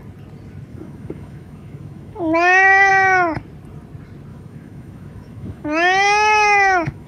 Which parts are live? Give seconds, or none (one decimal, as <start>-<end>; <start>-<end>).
0.0-0.7; 2.9-4.3

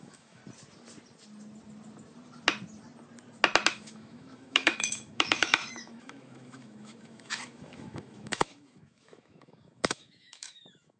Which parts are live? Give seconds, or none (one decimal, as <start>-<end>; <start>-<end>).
0.4-3.7

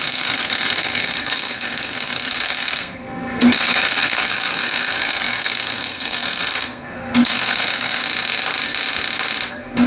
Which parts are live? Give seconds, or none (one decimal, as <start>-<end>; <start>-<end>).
8.0-9.5

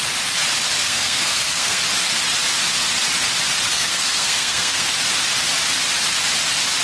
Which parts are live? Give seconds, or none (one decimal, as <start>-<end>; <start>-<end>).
0.0-0.8; 1.8-3.7; 4.9-6.8